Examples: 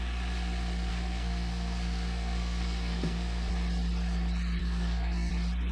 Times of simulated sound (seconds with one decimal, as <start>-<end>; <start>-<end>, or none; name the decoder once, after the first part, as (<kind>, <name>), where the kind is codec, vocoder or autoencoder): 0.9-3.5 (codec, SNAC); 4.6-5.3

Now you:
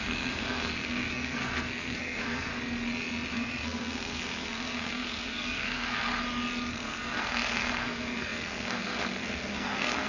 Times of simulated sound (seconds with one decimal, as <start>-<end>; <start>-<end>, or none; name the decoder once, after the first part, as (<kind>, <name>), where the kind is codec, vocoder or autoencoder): 0.0-2.5 (codec, SNAC); 3.3-6.1; 6.7-10.1

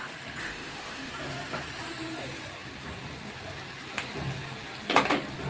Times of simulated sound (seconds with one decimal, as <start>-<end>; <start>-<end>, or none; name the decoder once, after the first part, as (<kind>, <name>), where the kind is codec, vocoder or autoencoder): 0.4-1.1 (autoencoder, DAC-VAE)

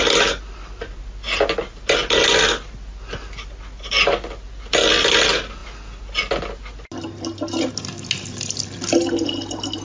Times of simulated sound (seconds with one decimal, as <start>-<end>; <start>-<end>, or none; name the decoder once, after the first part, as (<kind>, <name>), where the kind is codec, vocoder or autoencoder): none

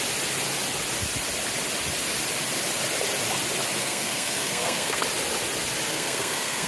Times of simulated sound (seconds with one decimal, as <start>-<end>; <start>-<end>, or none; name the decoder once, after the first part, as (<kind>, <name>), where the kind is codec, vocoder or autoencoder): 3.8-5.0 (codec, SNAC); 5.9-6.7

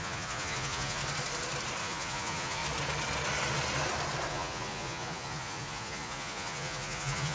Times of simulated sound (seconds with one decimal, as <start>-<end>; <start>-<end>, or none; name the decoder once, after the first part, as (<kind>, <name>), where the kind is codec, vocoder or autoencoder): 0.0-1.0 (vocoder, Vocos); 1.8-2.6; 4.3-7.3

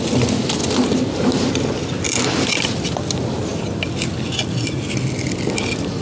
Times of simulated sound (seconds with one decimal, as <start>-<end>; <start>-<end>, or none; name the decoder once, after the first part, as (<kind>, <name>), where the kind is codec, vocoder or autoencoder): none